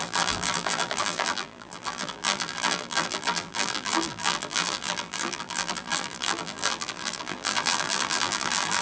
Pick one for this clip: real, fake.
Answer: fake